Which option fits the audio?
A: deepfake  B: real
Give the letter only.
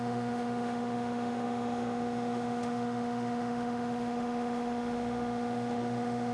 A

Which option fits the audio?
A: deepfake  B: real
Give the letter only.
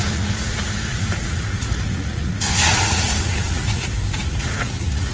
A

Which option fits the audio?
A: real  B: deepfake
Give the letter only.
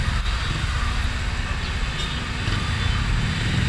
A